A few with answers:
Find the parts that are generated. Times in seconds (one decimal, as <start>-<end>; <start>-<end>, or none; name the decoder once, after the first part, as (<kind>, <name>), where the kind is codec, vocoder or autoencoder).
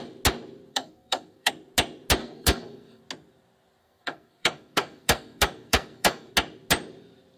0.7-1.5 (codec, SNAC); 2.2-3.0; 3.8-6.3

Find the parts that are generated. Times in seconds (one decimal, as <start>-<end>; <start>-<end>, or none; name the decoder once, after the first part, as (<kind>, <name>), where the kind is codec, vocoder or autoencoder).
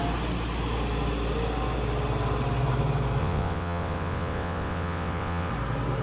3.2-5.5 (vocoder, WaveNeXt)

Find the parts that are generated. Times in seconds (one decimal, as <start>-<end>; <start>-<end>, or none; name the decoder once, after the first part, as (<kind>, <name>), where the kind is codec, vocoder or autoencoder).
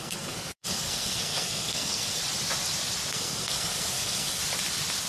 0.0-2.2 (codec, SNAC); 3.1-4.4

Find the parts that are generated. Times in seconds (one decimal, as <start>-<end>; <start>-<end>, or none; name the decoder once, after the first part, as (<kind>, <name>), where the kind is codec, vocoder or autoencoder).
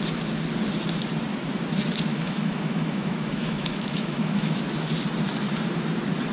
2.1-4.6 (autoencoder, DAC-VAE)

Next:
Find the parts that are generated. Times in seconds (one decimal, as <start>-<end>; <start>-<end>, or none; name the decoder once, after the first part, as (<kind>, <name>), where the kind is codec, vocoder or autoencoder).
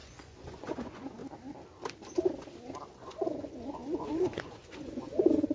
0.0-1.2 (vocoder, Vocos); 2.9-5.5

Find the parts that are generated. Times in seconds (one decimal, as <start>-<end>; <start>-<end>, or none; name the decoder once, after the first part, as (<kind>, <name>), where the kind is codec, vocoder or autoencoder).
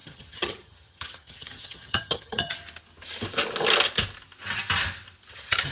0.0-2.6 (vocoder, HiFi-GAN); 5.3-5.7